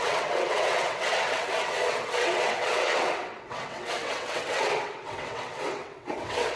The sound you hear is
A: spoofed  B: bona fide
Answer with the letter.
A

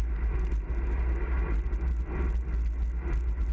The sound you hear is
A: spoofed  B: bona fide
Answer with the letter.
B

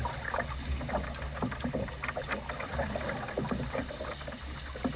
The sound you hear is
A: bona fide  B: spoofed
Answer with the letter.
A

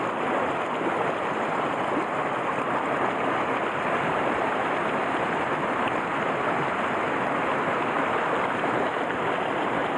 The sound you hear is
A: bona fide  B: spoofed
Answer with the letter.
A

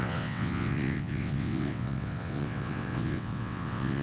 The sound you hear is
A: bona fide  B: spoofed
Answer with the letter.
B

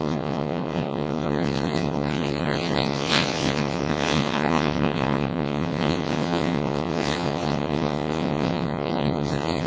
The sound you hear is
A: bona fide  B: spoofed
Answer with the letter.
B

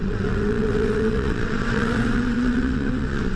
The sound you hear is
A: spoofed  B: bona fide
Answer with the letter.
A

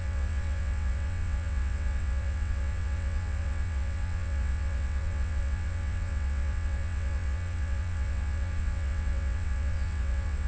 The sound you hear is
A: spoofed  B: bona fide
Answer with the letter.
A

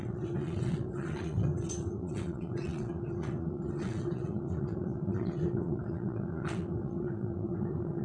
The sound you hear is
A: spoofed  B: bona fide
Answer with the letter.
A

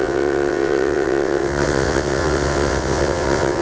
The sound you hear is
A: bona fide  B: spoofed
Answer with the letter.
B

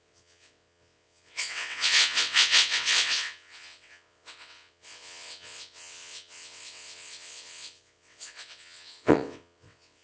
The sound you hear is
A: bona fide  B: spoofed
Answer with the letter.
B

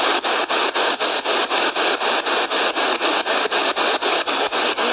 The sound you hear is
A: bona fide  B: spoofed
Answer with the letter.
A